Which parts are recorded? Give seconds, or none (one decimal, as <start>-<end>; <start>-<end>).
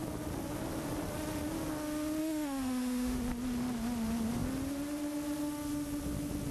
0.0-2.2; 3.2-6.5